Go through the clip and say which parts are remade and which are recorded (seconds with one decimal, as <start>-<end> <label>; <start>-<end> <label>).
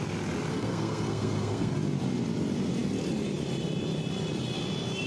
0.0-0.5 recorded; 0.5-1.7 remade; 1.7-5.1 recorded